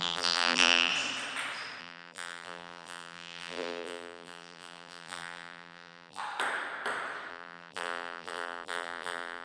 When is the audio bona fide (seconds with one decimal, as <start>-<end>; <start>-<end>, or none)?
0.9-1.8; 6.2-7.3